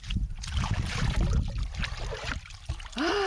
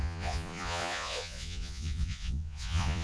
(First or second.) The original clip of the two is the first